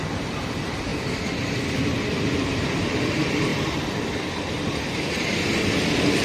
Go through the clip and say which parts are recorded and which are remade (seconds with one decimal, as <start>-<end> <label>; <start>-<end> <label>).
0.0-6.2 remade